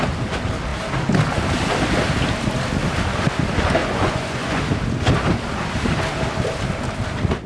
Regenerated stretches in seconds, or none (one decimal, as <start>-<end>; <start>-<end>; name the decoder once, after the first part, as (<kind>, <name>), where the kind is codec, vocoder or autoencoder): 3.8-4.6 (vocoder, Vocos)

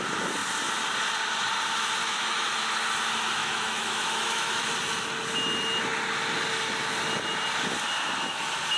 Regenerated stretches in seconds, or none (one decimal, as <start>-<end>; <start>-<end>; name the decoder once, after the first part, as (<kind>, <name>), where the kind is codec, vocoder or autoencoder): 2.0-2.6 (autoencoder, DAC-VAE); 3.4-4.7

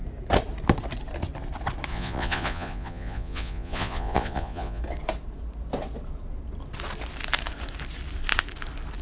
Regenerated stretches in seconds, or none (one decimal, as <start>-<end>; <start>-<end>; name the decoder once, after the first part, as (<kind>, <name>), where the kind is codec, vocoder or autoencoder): 1.9-4.8 (vocoder, Vocos)

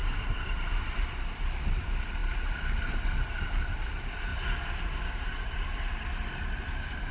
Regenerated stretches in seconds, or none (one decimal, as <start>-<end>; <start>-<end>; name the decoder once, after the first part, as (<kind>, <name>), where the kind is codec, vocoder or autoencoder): 0.0-4.3 (vocoder, BigVGAN v2); 6.4-7.1

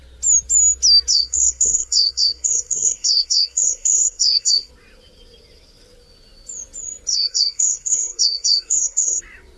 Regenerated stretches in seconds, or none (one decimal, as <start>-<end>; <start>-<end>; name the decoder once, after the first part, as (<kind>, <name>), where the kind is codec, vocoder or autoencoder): 1.1-4.7 (codec, SNAC); 7.1-9.2